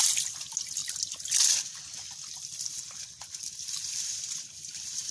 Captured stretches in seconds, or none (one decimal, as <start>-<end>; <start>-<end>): 0.0-3.9